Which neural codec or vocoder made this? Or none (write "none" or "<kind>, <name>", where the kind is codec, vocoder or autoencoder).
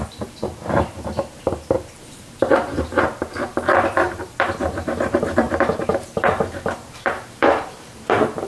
vocoder, BigVGAN v2